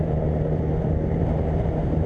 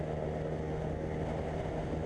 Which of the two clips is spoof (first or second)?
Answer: first